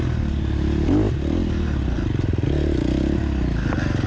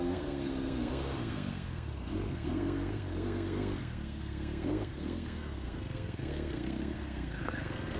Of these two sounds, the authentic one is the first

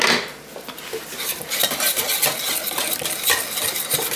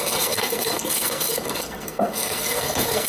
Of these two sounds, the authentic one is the first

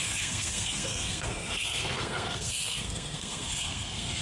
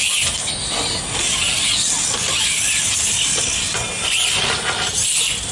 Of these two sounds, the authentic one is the second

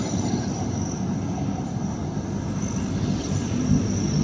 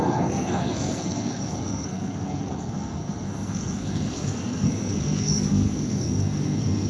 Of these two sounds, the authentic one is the first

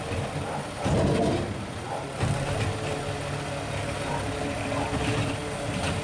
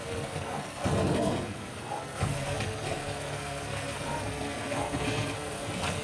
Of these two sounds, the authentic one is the first